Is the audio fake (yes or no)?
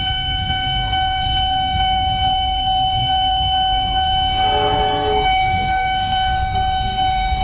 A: yes